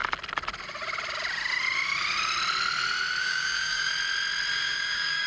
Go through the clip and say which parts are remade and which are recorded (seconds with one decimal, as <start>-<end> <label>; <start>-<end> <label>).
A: 0.0-3.2 recorded; 3.2-3.9 remade; 3.9-4.5 recorded; 4.5-5.3 remade